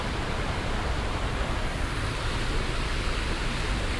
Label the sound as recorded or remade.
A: recorded